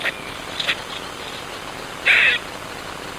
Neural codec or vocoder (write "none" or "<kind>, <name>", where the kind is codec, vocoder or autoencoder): none